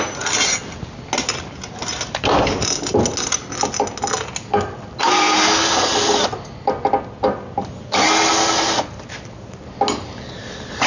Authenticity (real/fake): real